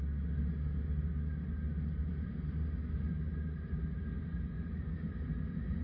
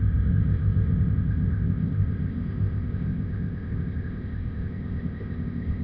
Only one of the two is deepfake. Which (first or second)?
second